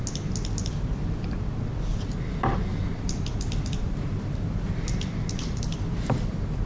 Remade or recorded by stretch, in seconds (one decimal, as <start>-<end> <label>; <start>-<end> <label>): 0.0-2.7 recorded; 2.7-6.7 remade